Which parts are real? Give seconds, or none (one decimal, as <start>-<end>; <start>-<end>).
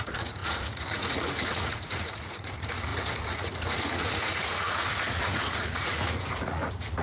none